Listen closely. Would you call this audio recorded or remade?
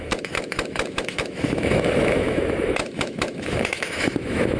remade